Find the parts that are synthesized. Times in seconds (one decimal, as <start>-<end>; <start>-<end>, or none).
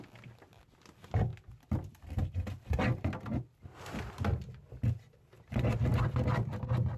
none